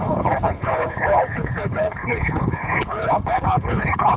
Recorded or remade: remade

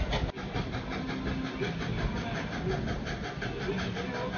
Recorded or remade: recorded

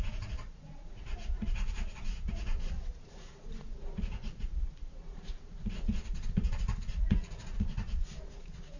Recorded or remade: remade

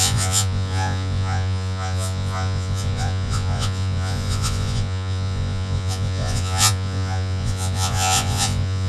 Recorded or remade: remade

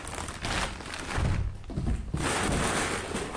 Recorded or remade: recorded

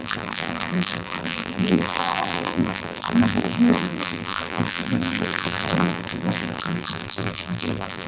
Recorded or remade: remade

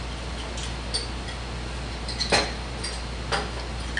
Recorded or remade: recorded